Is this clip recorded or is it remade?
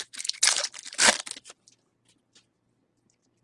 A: recorded